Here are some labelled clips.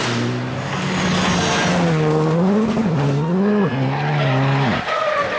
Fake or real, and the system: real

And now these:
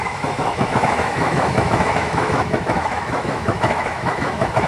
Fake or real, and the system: fake, autoencoder, DAC-VAE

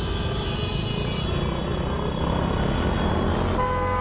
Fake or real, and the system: real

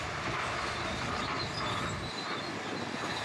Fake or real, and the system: real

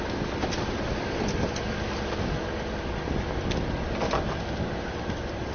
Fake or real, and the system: real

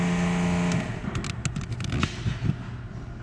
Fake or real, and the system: real